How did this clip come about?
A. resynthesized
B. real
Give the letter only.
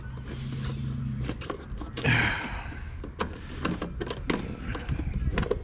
B